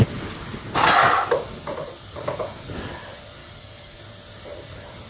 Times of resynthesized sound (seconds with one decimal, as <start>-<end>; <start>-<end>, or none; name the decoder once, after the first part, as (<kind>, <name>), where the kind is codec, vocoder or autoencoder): 3.4-4.0 (codec, DAC)